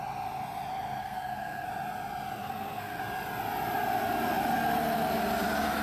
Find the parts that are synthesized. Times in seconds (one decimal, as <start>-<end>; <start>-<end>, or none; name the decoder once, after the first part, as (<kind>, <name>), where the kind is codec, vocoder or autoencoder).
1.0-1.7 (codec, SNAC); 2.4-3.0